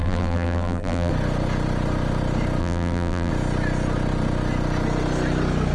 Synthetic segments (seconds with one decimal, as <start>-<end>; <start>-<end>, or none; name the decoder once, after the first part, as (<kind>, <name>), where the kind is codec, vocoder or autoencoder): 0.0-1.1 (vocoder, BigVGAN v2); 2.6-3.3